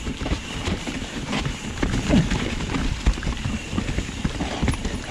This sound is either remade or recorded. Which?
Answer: remade